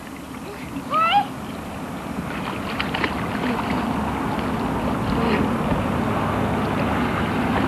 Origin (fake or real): real